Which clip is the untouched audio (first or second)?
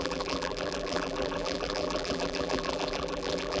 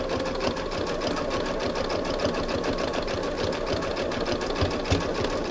second